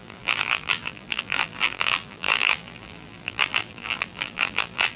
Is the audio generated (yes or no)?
yes